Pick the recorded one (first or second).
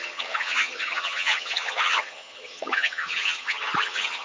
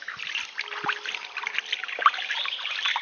second